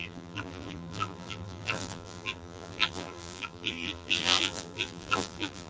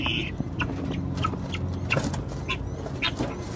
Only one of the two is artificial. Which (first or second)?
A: first